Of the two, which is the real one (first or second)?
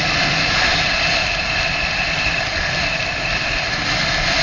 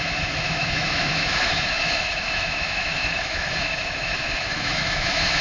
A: first